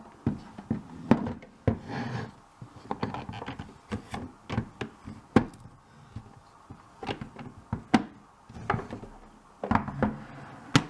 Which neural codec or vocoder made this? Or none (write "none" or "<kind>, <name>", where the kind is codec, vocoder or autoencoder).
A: none